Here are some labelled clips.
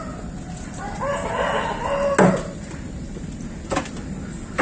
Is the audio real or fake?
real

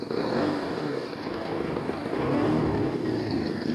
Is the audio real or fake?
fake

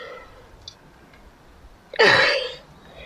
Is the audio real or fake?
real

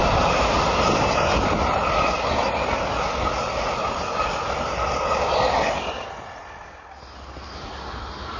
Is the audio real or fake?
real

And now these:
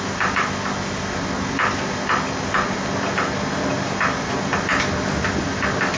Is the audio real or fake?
real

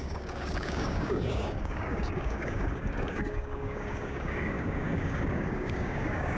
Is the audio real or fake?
fake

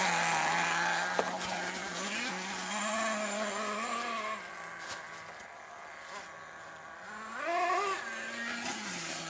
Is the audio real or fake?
real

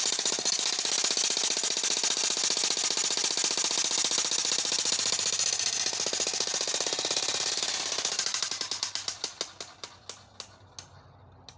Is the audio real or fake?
real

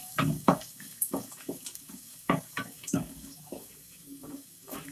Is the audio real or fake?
fake